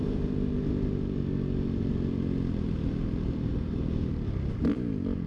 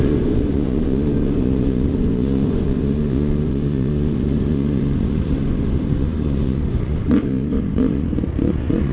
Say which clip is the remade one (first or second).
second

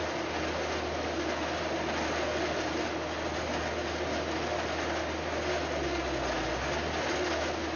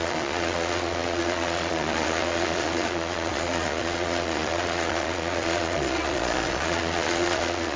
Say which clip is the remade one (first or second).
second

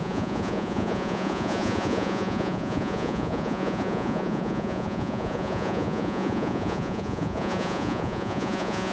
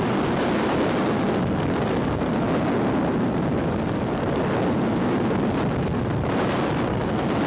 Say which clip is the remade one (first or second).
first